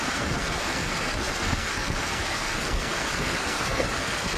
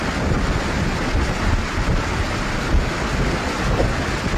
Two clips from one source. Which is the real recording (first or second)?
second